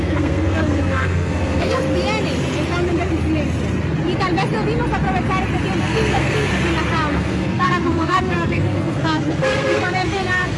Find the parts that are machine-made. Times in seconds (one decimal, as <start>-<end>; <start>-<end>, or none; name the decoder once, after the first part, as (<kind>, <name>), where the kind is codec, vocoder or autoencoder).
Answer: 0.0-1.8 (codec, SNAC); 5.8-6.5; 7.1-10.6